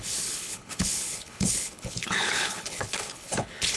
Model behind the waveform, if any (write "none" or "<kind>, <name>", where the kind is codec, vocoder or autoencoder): codec, HILCodec